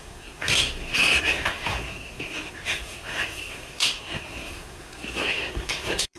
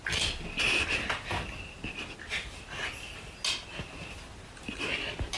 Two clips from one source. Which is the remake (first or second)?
first